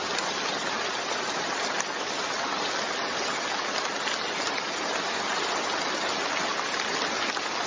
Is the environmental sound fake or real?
real